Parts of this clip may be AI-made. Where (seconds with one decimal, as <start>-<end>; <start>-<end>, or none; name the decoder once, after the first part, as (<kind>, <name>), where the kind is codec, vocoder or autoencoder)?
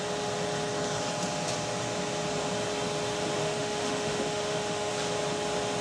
3.4-4.9 (autoencoder, DAC-VAE)